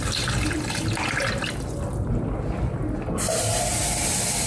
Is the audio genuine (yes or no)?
yes